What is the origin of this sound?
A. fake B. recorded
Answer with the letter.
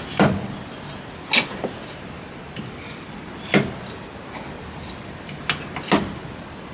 B